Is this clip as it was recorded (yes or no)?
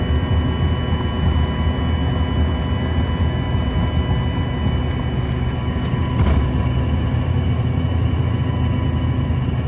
yes